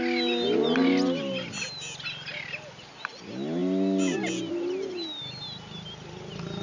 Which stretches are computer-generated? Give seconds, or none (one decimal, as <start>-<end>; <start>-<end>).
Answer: none